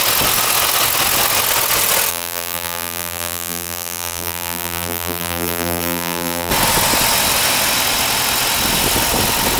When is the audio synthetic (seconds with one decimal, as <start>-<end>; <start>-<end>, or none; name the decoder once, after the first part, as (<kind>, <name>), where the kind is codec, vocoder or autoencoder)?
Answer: 2.1-6.5 (vocoder, BigVGAN v2)